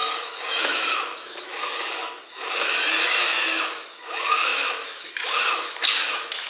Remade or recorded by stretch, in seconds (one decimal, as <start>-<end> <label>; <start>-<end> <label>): 0.0-6.5 remade

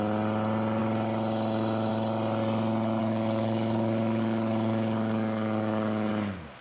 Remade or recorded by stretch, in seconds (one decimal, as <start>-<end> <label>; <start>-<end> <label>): 0.0-3.0 recorded; 3.0-6.1 remade; 6.1-6.6 recorded

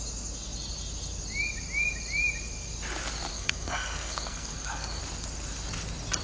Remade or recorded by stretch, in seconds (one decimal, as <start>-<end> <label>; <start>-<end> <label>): 0.0-3.3 recorded; 3.3-5.0 remade; 5.0-6.2 recorded

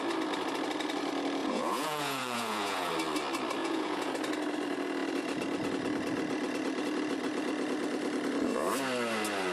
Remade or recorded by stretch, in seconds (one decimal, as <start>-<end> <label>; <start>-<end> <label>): 0.0-1.4 recorded; 1.4-2.9 remade; 2.9-3.6 recorded; 3.6-4.1 remade; 4.1-9.5 recorded